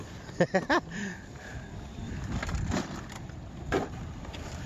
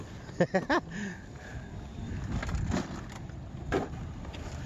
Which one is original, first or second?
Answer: second